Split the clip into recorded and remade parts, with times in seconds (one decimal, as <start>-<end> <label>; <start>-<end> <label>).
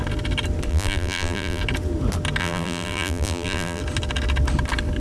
0.0-0.7 recorded; 0.7-1.6 remade; 1.6-2.4 recorded; 2.4-3.8 remade; 3.8-5.0 recorded